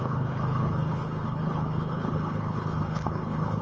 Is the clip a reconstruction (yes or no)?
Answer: yes